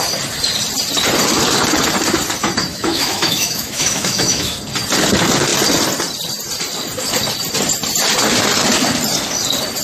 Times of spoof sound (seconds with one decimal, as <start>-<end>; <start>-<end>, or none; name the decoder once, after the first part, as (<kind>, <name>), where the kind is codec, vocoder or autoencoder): 2.7-4.6 (autoencoder, DAC-VAE)